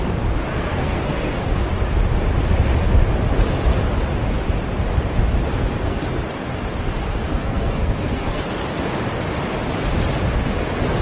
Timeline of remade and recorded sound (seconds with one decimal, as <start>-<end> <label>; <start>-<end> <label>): 0.0-0.5 recorded; 0.5-1.7 remade; 1.7-5.5 recorded; 5.5-6.0 remade; 6.0-7.3 recorded; 7.3-8.4 remade; 8.4-11.0 recorded